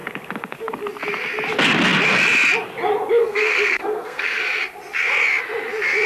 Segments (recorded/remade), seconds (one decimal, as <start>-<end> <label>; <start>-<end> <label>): 0.0-0.8 remade; 0.8-3.2 recorded; 3.2-4.4 remade; 4.4-6.1 recorded